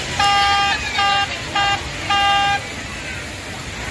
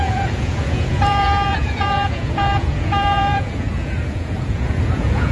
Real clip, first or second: first